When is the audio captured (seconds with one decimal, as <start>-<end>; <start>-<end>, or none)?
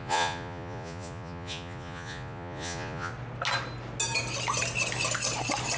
3.1-5.8